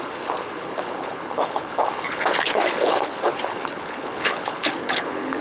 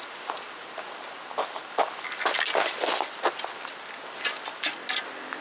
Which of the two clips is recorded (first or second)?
second